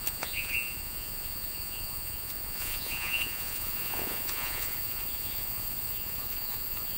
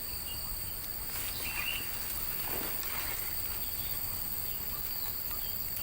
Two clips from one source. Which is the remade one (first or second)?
first